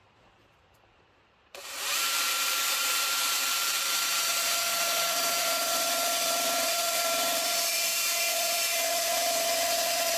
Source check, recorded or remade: remade